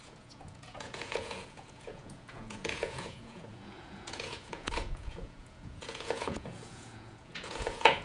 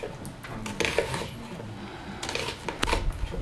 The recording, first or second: second